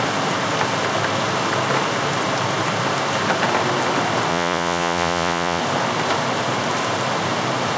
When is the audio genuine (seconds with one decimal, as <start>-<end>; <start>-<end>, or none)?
0.0-4.3; 5.6-7.8